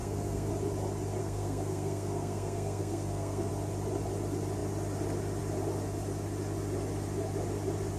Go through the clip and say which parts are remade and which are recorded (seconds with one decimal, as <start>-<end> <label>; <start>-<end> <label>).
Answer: 0.0-0.5 remade; 0.5-1.2 recorded; 1.2-3.5 remade; 3.5-8.0 recorded